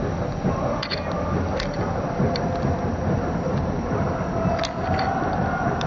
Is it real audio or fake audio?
real